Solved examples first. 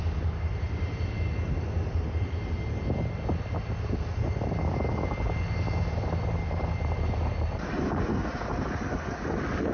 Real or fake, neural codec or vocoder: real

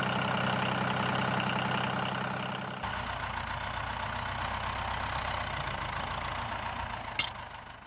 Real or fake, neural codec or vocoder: real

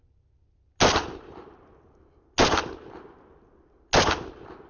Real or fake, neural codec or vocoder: real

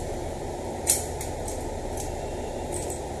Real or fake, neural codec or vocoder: real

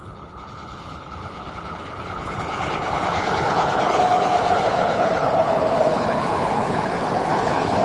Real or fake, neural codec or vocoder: fake, codec, HILCodec